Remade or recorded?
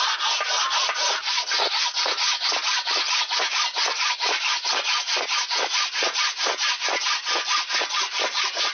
recorded